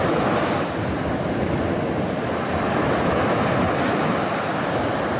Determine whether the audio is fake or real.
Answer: real